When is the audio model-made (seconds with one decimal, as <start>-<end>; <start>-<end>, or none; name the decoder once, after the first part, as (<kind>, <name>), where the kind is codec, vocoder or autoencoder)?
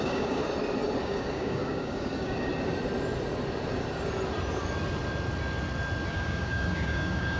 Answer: 0.0-0.4 (codec, DAC); 1.0-2.5; 6.1-7.4